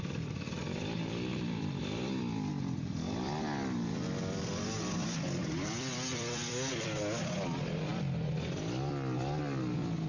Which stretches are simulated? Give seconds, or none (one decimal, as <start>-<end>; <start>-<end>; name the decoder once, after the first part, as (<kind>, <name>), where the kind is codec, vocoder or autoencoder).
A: 0.0-7.9 (vocoder, BigVGAN v2)